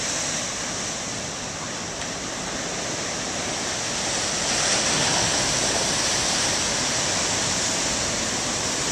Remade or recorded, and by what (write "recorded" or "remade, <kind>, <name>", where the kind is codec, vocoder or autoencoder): recorded